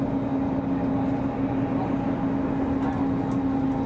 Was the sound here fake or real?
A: real